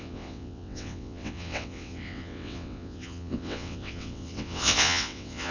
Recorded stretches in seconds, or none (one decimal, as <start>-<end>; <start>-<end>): none